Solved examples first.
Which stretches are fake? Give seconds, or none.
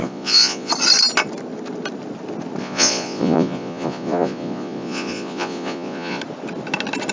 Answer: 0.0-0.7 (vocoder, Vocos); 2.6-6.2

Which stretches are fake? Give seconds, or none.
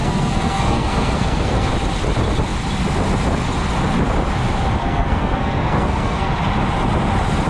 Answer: 0.0-1.7 (codec, SNAC); 4.8-6.3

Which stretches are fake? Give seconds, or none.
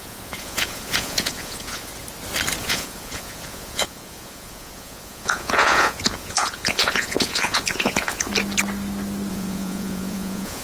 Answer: 0.0-1.9 (vocoder, Vocos); 2.6-8.3; 9.3-10.6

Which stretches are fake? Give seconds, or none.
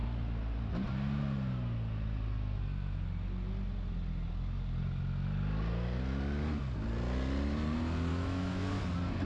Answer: 8.1-8.8 (autoencoder, DAC-VAE)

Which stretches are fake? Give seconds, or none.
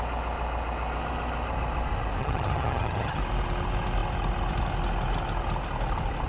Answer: 2.2-3.2 (vocoder, HiFi-GAN)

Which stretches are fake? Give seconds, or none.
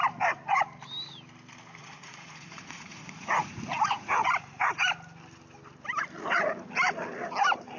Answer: 1.8-4.7 (vocoder, Vocos)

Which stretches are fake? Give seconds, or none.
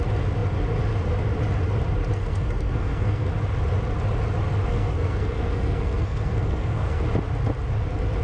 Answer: 2.1-3.3 (codec, SNAC); 4.7-7.0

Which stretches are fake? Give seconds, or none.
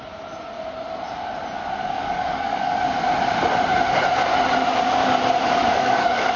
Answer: 1.8-2.8 (codec, DAC); 5.6-6.4